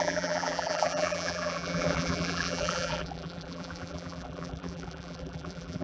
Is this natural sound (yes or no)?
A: no